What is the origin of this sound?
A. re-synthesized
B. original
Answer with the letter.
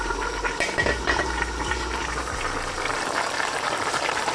A